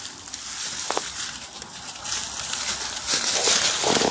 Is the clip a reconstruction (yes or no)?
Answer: no